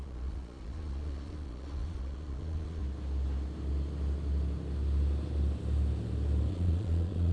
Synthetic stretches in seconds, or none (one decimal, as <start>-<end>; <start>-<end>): 0.0-2.8; 6.5-7.3